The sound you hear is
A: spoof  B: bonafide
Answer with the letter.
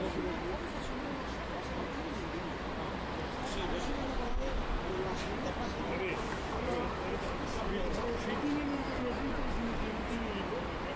B